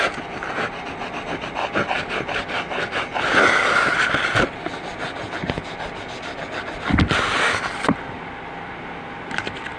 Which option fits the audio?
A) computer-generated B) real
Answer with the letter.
B